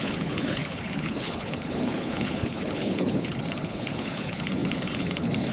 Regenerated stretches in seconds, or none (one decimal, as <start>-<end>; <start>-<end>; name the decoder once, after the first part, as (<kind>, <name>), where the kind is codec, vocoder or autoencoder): 0.0-5.5 (codec, HILCodec)